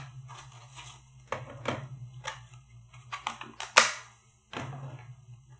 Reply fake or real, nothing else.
real